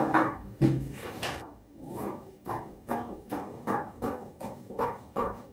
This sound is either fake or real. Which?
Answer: fake